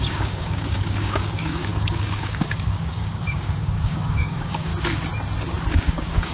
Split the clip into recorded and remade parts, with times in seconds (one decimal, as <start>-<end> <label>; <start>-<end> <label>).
0.0-4.7 remade; 4.7-5.7 recorded; 5.7-6.3 remade

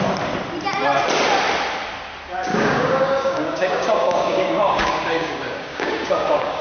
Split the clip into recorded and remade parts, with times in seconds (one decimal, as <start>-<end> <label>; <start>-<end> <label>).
0.0-2.5 recorded; 2.5-6.6 remade

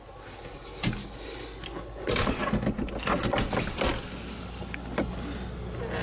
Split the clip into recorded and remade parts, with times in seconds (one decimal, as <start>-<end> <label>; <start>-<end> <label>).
0.0-6.0 recorded

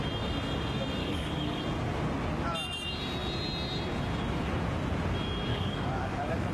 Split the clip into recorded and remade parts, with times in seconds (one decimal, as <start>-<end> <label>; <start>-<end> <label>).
0.0-1.0 recorded; 1.0-1.6 remade; 1.6-5.5 recorded; 5.5-6.5 remade